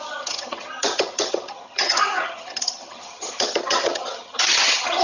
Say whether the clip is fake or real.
fake